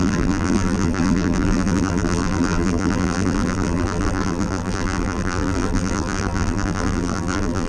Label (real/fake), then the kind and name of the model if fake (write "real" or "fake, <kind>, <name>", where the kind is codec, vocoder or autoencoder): fake, vocoder, BigVGAN v2